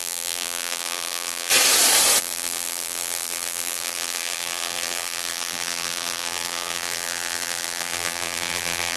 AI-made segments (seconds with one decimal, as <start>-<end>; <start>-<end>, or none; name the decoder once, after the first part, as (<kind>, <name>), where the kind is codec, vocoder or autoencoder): 0.0-1.5 (vocoder, BigVGAN v2); 2.2-9.0